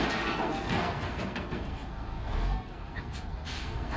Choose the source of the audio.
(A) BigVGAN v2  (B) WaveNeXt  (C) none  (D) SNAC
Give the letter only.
D